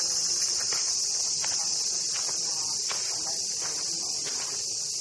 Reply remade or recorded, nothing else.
recorded